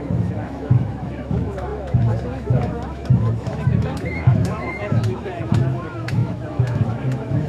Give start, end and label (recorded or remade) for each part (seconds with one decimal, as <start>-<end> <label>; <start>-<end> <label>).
0.0-7.5 remade